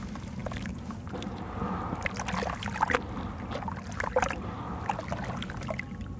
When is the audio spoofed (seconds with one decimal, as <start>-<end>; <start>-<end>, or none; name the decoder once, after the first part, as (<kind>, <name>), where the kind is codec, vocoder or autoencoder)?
none